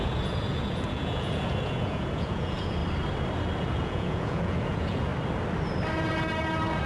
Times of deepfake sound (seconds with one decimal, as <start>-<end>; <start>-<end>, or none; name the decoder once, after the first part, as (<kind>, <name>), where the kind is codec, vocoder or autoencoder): 0.0-2.8 (vocoder, Vocos); 3.6-5.1